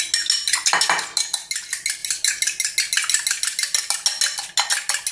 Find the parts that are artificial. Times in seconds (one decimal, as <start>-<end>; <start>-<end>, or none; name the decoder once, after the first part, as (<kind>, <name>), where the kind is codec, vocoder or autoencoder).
none